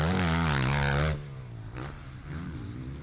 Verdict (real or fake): real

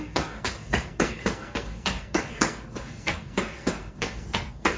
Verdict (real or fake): fake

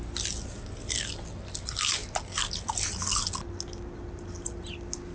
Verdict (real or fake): real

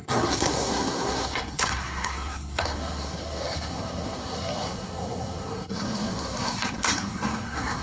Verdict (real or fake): fake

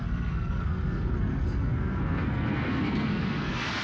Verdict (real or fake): fake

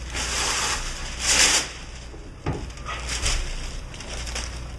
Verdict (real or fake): real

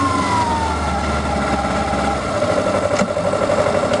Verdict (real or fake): real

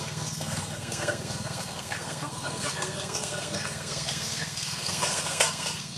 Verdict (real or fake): fake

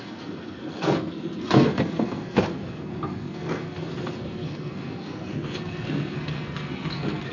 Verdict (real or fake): fake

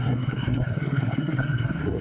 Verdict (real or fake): fake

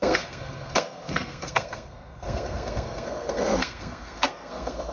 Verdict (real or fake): fake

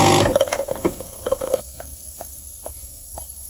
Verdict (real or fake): fake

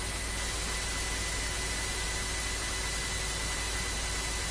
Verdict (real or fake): real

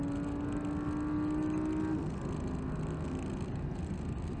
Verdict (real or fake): real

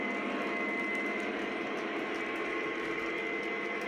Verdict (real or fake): real